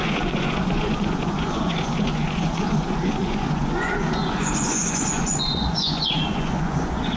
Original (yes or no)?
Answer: no